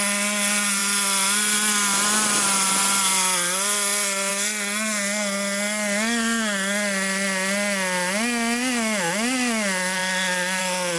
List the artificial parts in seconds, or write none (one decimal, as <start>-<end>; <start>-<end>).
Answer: none